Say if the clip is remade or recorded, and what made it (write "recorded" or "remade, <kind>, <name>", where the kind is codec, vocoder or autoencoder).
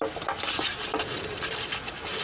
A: recorded